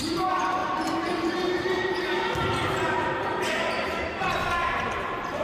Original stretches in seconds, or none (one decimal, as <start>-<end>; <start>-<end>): 0.0-5.4